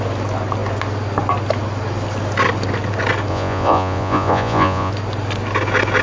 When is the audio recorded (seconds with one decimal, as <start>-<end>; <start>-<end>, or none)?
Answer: 0.0-3.3; 4.9-6.0